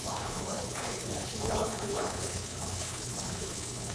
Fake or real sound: fake